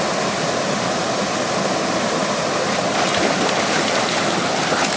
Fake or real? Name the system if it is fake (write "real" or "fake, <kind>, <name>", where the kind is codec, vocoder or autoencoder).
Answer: real